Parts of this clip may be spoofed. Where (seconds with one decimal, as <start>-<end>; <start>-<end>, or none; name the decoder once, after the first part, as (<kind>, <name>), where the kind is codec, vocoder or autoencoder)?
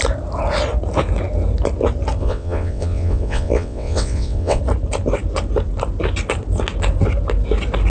2.2-4.6 (vocoder, WaveNeXt)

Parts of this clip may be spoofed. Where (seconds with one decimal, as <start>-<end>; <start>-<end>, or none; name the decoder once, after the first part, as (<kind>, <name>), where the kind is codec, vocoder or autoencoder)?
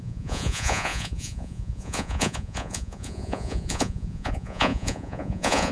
0.0-5.7 (vocoder, Vocos)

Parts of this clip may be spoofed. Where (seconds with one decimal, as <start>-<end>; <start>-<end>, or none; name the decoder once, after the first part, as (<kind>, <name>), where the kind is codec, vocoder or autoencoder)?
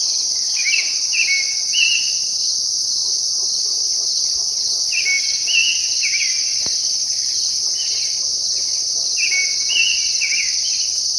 none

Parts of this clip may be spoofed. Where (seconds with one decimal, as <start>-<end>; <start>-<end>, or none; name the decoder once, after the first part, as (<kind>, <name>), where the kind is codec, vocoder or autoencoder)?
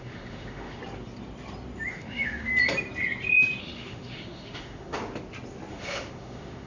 0.0-0.8 (autoencoder, DAC-VAE); 1.9-2.5; 3.6-5.0; 5.7-6.7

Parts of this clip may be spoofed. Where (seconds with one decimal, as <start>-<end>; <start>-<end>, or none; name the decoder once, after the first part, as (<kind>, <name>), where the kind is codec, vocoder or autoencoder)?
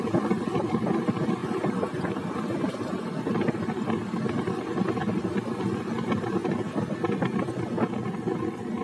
none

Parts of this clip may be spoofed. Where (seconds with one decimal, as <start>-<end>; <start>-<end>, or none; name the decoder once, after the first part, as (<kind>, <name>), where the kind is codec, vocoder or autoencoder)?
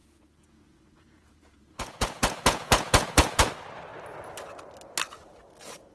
0.0-3.5 (vocoder, Vocos)